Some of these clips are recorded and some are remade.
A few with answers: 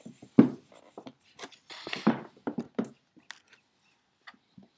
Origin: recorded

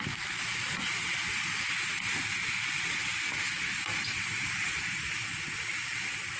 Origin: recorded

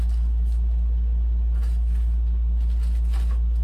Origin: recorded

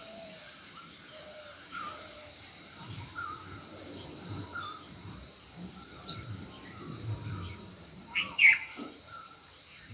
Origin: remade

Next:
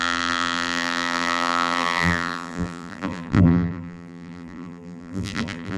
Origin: remade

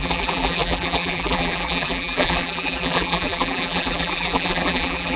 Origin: remade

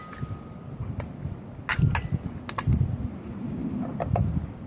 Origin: recorded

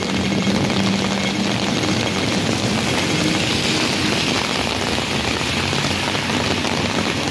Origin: recorded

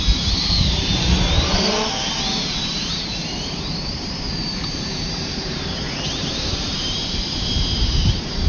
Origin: remade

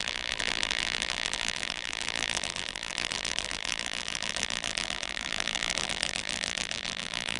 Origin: remade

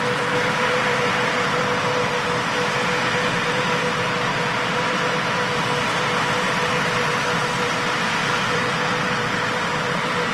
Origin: remade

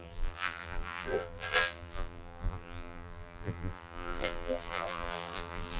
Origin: remade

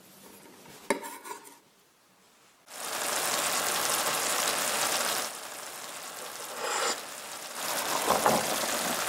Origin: recorded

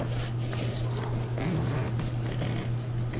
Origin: recorded